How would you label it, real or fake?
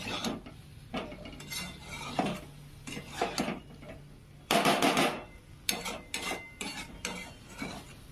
real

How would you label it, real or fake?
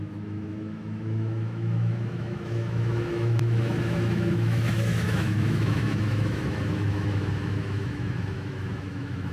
fake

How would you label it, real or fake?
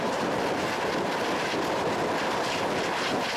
real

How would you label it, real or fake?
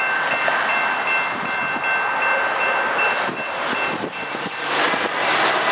real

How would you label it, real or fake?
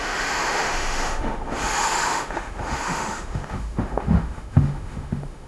fake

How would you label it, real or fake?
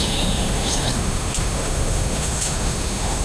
fake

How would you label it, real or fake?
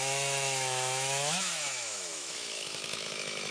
fake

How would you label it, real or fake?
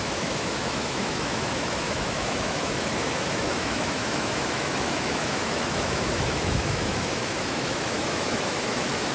fake